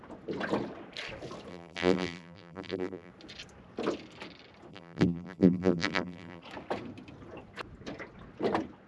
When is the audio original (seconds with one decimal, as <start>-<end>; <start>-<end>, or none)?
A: 0.0-1.5; 3.1-4.7; 6.4-8.9